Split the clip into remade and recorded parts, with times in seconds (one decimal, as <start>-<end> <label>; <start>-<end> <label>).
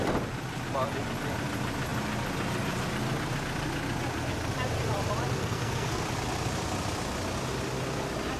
0.0-5.4 recorded; 5.4-6.0 remade; 6.0-8.4 recorded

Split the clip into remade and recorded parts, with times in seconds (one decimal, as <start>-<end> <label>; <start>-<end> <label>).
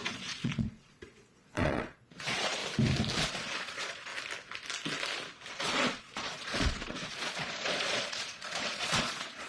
0.0-2.6 remade; 2.6-3.3 recorded; 3.3-4.1 remade; 4.1-5.5 recorded; 5.5-9.5 remade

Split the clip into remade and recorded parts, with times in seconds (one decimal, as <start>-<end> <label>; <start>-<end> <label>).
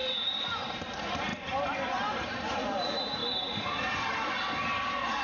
0.0-0.7 remade; 0.7-1.3 recorded; 1.3-2.4 remade; 2.4-5.2 recorded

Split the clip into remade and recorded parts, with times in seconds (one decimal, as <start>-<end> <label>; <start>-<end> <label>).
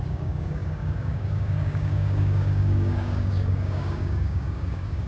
0.0-5.1 remade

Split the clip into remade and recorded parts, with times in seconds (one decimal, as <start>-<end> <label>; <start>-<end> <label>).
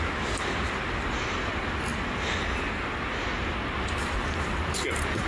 0.0-5.3 recorded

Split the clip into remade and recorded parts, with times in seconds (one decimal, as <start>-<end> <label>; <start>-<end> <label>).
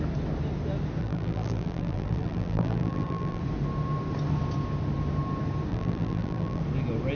0.0-1.0 recorded; 1.0-3.4 remade; 3.4-5.7 recorded; 5.7-6.6 remade; 6.6-7.1 recorded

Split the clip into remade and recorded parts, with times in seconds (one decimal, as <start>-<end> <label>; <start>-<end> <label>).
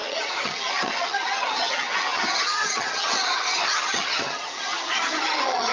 0.0-5.7 remade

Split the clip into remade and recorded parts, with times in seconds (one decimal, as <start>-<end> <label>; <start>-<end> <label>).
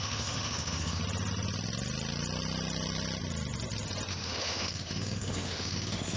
0.0-1.0 remade; 1.0-4.1 recorded; 4.1-6.2 remade